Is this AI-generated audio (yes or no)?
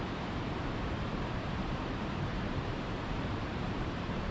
yes